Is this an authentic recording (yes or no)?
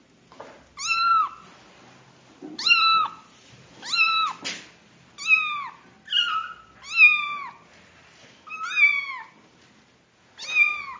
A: yes